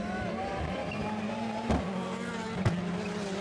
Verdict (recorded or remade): recorded